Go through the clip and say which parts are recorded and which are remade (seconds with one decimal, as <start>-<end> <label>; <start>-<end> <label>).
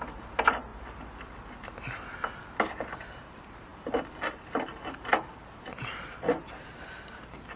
0.0-7.6 recorded